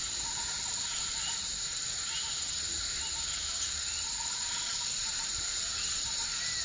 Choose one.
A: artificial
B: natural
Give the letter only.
A